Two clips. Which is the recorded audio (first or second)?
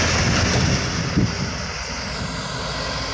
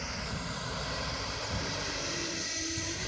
first